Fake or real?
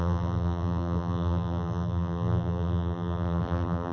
fake